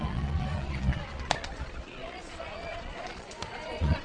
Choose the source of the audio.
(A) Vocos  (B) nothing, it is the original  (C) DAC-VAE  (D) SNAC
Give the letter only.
A